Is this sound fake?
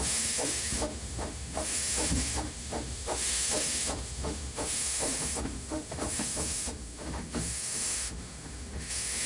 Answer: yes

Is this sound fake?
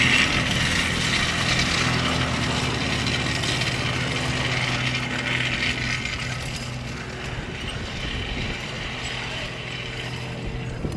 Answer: no